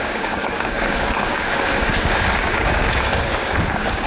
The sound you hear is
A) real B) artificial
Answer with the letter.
B